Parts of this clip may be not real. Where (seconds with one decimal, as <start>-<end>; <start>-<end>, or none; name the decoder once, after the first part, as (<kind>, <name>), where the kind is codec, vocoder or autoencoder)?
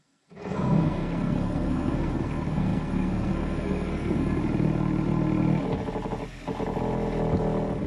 0.0-4.4 (codec, SNAC)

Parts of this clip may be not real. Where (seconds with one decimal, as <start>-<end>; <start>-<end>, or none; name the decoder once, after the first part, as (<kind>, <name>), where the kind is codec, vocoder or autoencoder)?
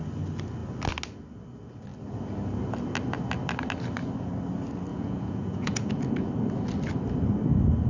4.9-5.9 (vocoder, Vocos)